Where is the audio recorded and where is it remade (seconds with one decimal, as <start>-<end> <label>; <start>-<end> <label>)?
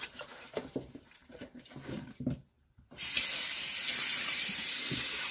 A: 0.0-5.3 remade